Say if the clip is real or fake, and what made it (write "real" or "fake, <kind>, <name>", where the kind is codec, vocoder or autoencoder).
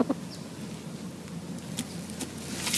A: real